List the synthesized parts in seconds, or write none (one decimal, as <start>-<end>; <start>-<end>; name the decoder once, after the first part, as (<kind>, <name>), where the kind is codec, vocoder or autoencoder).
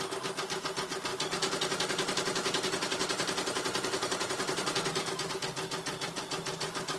none